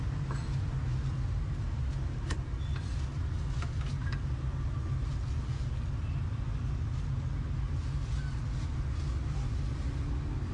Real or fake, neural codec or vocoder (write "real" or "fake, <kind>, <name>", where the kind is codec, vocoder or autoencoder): real